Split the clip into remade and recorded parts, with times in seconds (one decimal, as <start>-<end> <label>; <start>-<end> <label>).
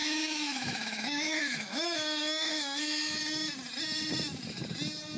0.0-3.2 remade; 3.2-5.2 recorded